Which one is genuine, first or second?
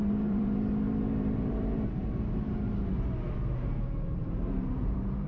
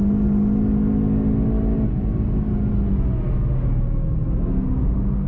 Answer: second